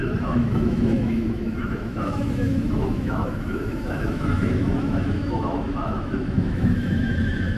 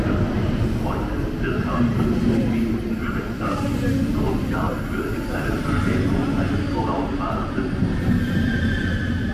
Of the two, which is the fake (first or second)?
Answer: first